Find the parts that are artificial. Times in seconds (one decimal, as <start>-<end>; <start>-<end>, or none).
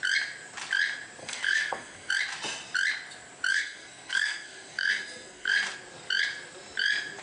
1.2-2.1; 3.5-5.5